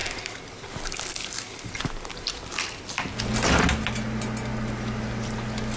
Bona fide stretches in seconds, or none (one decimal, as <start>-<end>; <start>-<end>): 0.0-5.8